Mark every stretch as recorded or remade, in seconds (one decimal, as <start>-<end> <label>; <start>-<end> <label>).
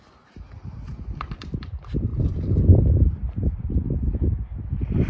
0.0-5.1 recorded